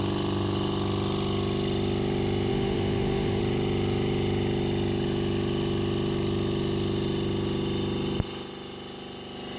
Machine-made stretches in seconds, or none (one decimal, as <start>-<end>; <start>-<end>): 2.5-3.4